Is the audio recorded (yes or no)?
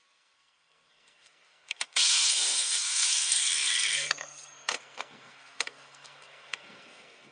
no